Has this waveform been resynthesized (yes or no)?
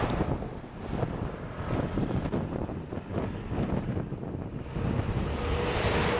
no